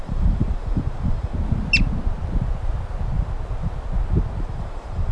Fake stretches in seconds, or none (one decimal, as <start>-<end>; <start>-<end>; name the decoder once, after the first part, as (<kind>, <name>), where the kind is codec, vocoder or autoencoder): 0.0-1.3 (vocoder, BigVGAN v2); 4.4-5.1